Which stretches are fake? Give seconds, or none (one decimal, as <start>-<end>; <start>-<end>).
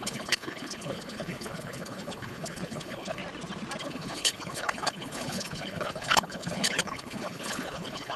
0.0-3.2; 3.8-8.2